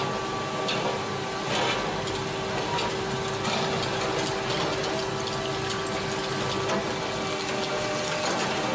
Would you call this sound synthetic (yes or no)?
no